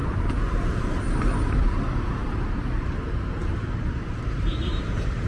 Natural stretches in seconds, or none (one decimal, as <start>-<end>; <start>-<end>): 0.9-2.2

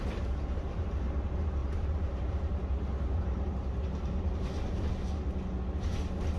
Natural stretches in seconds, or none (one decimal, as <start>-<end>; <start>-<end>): 0.9-1.6; 4.9-6.4

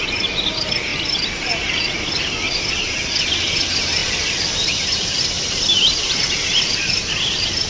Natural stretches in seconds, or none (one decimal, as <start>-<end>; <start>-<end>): 0.5-0.9; 1.5-4.0

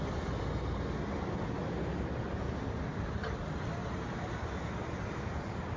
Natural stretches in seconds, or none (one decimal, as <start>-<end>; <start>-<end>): 0.0-5.8

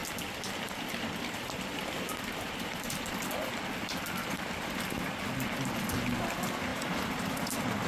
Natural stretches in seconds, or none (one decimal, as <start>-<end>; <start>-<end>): 3.1-7.9

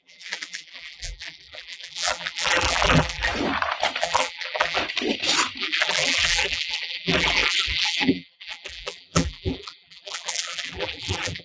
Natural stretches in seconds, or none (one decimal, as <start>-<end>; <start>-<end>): 3.3-4.0; 4.8-5.6